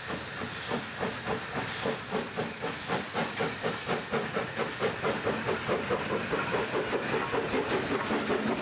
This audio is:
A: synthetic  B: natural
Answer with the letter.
B